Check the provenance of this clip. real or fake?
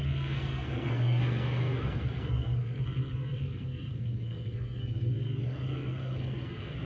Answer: fake